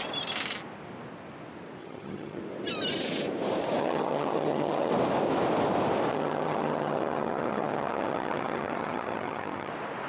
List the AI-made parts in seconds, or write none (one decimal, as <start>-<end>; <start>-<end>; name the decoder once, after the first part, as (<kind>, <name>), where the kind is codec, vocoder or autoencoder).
1.8-2.4 (vocoder, HiFi-GAN); 3.8-4.9; 6.1-9.7